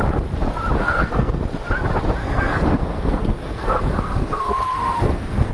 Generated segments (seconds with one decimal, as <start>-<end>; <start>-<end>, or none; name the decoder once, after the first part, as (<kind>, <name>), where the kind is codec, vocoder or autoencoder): 0.8-1.4 (codec, SNAC); 2.2-5.5